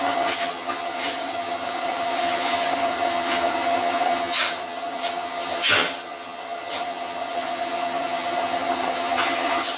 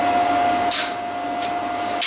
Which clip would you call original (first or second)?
second